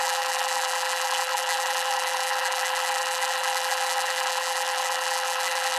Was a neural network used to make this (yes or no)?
yes